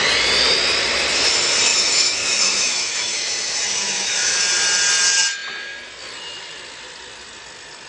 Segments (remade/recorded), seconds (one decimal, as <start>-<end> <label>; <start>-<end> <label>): 0.0-1.7 recorded; 1.7-4.4 remade; 4.4-7.9 recorded